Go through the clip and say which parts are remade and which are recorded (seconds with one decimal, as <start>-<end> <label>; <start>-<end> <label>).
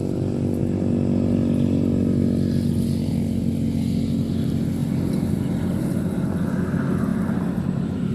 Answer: 0.0-8.1 recorded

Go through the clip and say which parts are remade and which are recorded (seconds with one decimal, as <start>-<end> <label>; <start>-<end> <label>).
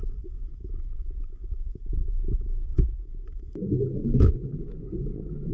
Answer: 0.0-0.6 remade; 0.6-1.2 recorded; 1.2-5.5 remade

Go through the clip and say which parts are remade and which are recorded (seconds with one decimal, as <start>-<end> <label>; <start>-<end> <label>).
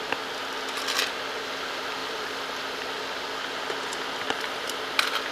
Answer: 0.0-5.3 recorded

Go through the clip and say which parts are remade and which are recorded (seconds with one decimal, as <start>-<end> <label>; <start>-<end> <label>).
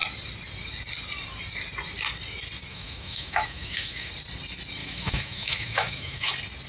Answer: 0.0-2.7 recorded; 2.7-4.1 remade; 4.1-4.8 recorded; 4.8-6.3 remade; 6.3-6.7 recorded